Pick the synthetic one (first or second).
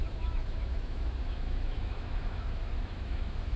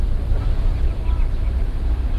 first